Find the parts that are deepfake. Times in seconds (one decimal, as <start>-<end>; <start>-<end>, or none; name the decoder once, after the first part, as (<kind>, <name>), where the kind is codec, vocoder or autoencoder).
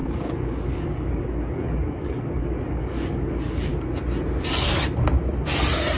0.0-3.7 (codec, DAC)